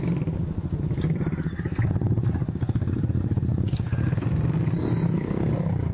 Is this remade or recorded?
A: remade